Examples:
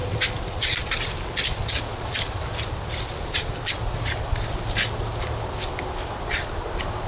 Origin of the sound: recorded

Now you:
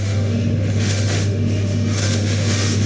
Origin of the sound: remade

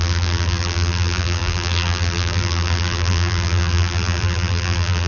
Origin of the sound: remade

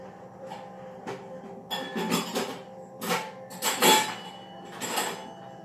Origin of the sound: recorded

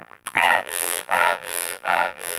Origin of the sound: remade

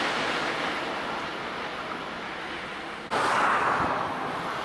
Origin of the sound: recorded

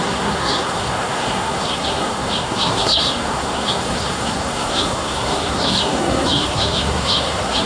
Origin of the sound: remade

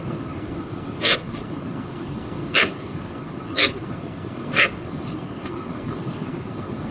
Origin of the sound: remade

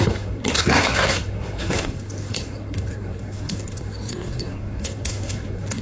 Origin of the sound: remade